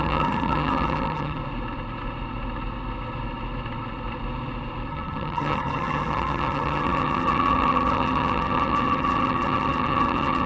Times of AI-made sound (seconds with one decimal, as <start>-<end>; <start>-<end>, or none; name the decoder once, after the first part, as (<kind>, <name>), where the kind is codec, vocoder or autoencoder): 0.0-1.4 (vocoder, HiFi-GAN); 4.9-10.5